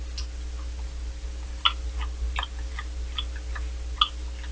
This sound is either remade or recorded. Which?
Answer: recorded